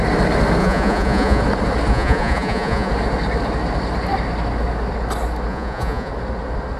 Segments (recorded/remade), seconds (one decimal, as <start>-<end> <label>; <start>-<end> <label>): 0.0-0.6 recorded; 0.6-1.4 remade; 1.4-1.9 recorded; 1.9-2.9 remade; 2.9-5.5 recorded; 5.5-6.1 remade; 6.1-6.8 recorded